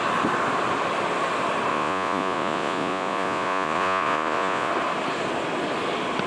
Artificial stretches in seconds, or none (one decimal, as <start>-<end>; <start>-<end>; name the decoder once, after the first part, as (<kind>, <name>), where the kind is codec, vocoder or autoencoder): 1.7-4.7 (vocoder, Vocos)

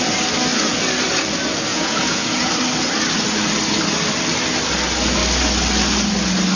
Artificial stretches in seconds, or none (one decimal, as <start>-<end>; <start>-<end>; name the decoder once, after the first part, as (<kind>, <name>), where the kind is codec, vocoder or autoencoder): 1.7-2.5 (vocoder, Vocos)